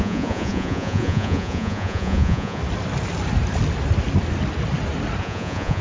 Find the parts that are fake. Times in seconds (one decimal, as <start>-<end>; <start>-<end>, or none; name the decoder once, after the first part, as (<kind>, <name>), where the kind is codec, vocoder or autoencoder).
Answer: 0.0-2.6 (vocoder, Vocos); 5.2-5.8